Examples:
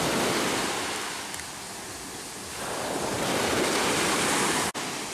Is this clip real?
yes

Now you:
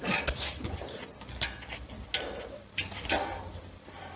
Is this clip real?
yes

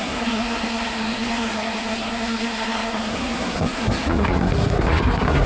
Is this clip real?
no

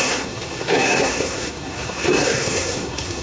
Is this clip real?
no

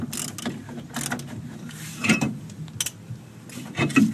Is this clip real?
yes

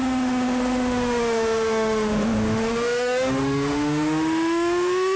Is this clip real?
no